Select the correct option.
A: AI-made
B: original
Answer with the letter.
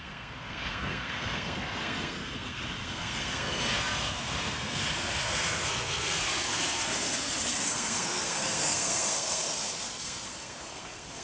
A